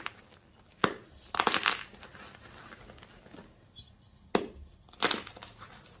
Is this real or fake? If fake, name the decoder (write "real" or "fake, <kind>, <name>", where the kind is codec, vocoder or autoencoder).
real